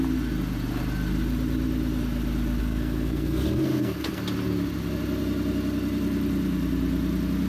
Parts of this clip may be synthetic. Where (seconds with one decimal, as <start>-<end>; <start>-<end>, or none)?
2.6-4.2